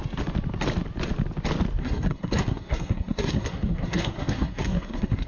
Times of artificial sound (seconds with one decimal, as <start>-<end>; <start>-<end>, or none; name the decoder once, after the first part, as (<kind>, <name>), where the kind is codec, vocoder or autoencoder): 1.8-5.3 (codec, SNAC)